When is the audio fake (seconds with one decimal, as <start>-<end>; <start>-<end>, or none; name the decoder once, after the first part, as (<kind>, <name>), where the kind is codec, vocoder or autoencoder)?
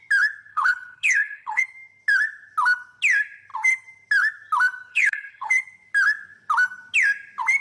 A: 0.5-1.6 (codec, HILCodec); 4.9-5.5